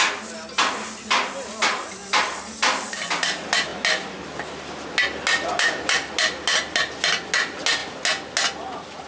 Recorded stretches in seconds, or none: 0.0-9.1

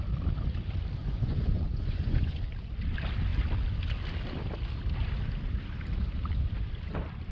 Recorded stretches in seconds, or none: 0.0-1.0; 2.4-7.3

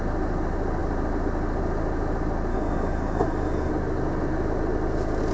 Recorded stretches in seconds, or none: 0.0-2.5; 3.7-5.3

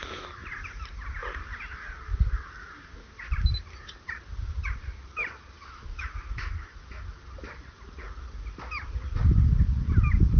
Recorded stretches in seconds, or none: 0.0-5.6; 7.2-10.4